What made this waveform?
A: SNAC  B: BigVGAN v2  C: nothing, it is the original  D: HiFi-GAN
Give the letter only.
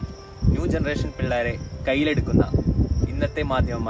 C